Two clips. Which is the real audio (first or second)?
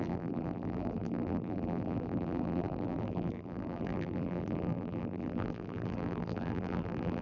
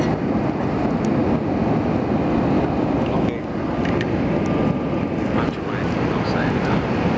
second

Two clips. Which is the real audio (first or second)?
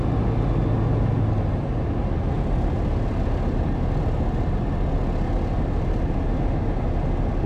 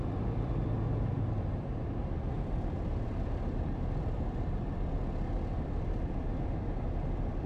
first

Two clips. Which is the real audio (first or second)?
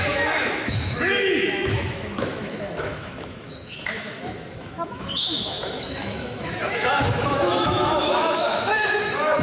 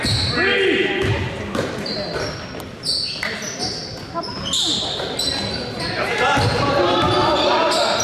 second